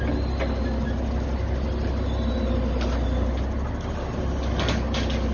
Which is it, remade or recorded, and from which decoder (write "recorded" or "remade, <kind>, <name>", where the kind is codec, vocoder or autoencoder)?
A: recorded